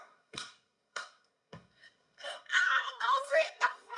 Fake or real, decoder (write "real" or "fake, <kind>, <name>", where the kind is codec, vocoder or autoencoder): fake, codec, SNAC